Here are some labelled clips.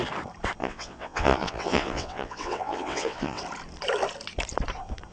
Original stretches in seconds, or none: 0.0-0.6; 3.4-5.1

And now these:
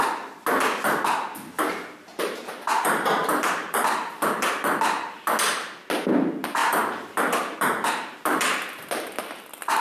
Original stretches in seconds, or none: 0.0-2.1; 5.2-6.6; 9.4-9.8

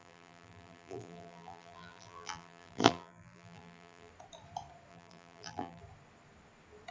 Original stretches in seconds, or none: 4.1-4.9; 5.8-6.9

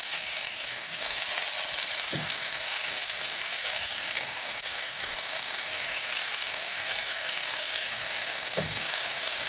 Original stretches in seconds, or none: 1.2-2.0

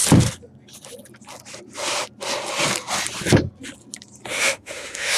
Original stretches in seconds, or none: 0.0-4.3